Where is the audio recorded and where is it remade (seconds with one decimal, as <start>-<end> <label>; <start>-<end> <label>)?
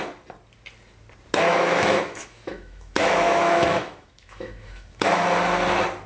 0.0-1.5 recorded; 1.5-5.2 remade; 5.2-6.1 recorded